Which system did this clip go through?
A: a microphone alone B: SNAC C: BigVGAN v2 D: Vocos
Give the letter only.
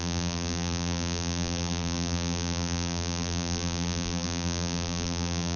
C